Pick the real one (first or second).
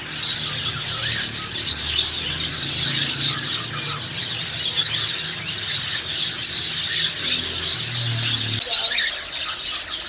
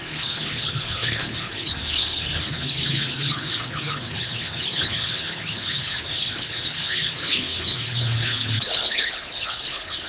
first